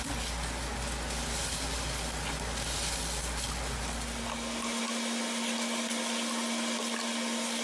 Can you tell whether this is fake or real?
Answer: real